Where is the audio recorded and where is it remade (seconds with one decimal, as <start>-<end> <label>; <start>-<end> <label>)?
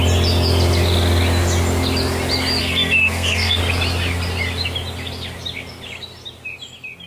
0.0-2.6 recorded; 2.6-3.6 remade; 3.6-7.1 recorded